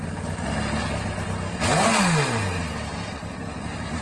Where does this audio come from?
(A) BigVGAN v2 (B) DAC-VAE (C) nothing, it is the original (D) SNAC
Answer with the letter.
C